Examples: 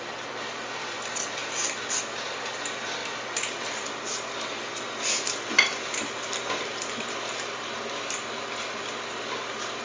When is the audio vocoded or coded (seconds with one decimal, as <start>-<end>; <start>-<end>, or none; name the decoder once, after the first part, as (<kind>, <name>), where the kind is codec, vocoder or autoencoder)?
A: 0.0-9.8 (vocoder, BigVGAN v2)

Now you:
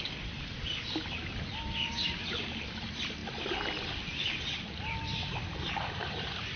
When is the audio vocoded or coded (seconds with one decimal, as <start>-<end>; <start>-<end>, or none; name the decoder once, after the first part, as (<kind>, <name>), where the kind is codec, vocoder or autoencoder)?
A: 0.0-3.2 (vocoder, BigVGAN v2); 5.7-6.6

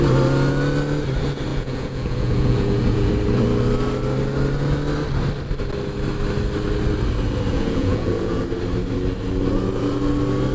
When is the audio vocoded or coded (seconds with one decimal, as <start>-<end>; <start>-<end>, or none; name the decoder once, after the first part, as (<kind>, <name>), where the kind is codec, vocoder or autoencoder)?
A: 1.5-3.1 (vocoder, Vocos); 7.5-8.4

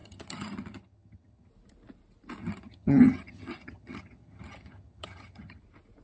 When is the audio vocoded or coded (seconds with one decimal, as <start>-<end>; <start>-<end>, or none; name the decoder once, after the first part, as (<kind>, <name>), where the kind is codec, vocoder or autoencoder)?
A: 0.0-1.5 (vocoder, HiFi-GAN); 2.4-5.6

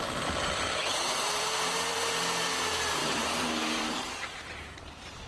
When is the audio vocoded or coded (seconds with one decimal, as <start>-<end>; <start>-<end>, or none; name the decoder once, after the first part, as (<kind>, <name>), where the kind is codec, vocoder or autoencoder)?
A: 0.0-5.3 (vocoder, BigVGAN v2)

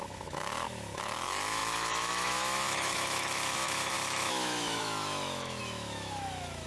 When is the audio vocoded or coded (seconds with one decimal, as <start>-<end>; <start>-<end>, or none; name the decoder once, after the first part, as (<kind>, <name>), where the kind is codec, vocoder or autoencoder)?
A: 0.0-6.7 (autoencoder, DAC-VAE)